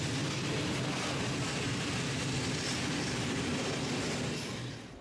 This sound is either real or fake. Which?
real